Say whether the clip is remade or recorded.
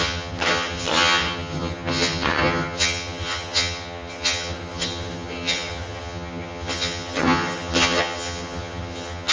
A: remade